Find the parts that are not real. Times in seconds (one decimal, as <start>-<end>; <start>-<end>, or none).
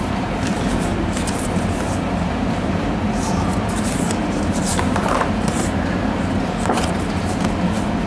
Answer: 0.0-8.1